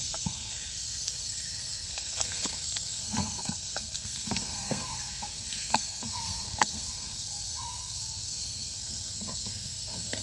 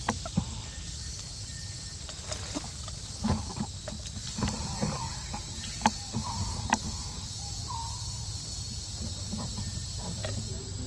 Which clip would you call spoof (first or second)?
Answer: first